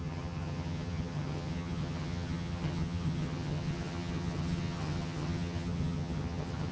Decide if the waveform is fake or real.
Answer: fake